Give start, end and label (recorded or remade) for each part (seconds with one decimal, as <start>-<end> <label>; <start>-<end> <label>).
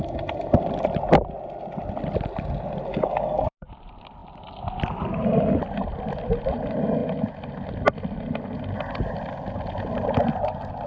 0.0-2.9 recorded; 2.9-3.7 remade; 3.7-10.9 recorded